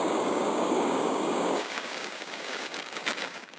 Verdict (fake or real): fake